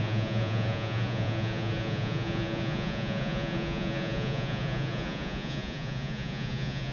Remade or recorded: remade